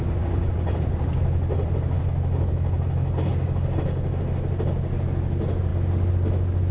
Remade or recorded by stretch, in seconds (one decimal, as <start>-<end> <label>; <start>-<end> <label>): 0.0-6.7 recorded